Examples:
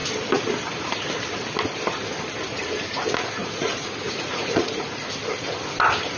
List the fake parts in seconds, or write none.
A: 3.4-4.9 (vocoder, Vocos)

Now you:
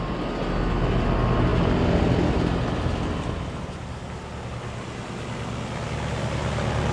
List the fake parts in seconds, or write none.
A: none